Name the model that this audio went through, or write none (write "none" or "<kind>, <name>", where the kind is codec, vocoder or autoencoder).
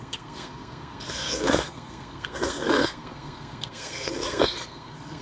codec, SNAC